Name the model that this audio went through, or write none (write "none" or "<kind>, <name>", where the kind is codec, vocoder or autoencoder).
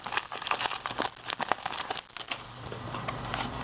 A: none